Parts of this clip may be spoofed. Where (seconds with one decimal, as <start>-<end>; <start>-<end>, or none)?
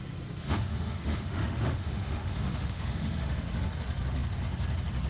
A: 0.4-3.5